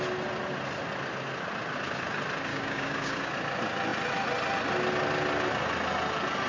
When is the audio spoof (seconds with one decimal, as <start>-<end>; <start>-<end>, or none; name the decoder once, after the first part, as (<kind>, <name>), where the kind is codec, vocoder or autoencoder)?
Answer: 2.5-3.3 (codec, DAC)